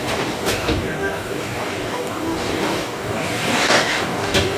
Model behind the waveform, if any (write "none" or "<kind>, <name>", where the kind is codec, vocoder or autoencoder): codec, DAC